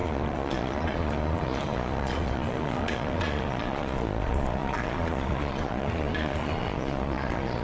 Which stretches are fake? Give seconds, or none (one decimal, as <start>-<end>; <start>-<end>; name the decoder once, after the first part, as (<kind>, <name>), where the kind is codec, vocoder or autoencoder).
0.0-7.6 (vocoder, Vocos)